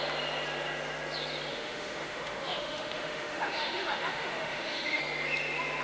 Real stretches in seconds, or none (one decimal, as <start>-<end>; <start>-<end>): 0.0-1.5; 5.0-5.8